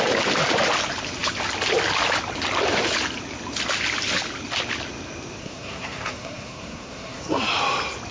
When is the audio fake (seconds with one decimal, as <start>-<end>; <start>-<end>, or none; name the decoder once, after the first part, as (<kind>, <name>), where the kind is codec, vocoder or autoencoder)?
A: 5.4-7.4 (codec, SNAC)

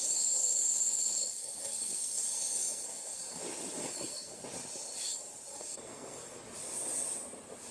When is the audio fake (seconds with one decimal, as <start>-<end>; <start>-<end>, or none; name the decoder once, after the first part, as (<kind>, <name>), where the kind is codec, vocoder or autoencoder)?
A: 0.4-3.4 (codec, SNAC); 3.8-4.4; 5.5-6.4

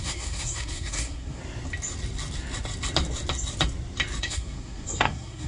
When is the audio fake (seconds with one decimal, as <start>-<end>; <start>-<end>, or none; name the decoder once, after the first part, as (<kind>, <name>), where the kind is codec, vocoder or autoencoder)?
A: 0.0-1.4 (codec, SNAC); 4.2-5.5

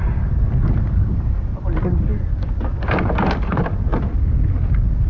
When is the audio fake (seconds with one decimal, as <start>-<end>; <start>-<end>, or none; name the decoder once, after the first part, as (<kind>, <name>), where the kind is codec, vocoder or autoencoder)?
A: none

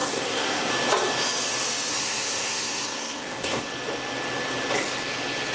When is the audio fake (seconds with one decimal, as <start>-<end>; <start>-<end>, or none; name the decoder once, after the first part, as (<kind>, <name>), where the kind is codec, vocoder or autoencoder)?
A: 0.0-0.7 (codec, SNAC); 1.9-3.6

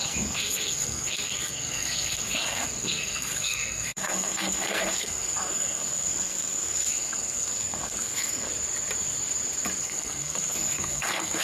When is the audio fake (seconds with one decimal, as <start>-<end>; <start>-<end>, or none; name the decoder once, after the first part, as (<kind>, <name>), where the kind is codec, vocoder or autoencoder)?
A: 0.0-8.5 (codec, SNAC); 9.8-11.4